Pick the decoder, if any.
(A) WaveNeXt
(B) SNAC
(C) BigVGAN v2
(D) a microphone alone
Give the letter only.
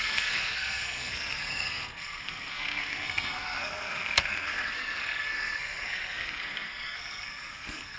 B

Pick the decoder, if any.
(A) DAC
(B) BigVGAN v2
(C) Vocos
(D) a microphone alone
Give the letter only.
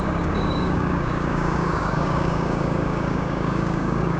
A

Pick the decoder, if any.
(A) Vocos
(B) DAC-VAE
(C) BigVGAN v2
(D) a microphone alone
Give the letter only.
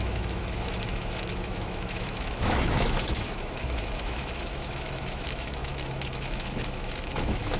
B